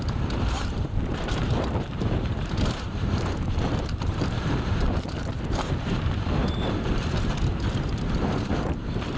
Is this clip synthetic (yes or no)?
yes